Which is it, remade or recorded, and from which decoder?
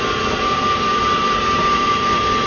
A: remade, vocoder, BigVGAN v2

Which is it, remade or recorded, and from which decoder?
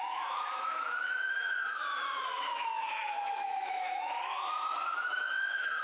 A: remade, autoencoder, DAC-VAE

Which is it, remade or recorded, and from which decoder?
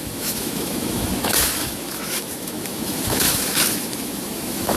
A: remade, autoencoder, DAC-VAE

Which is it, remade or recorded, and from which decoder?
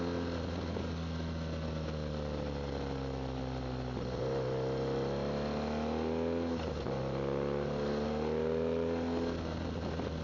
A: recorded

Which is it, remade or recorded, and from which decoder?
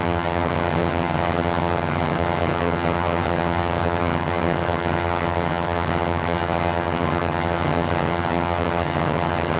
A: remade, vocoder, HiFi-GAN